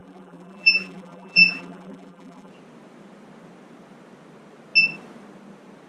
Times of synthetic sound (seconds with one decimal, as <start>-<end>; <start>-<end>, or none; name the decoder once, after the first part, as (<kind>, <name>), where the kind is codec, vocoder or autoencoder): 0.0-2.5 (vocoder, BigVGAN v2)